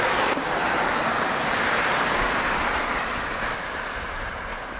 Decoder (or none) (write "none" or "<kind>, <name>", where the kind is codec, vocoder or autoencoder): vocoder, BigVGAN v2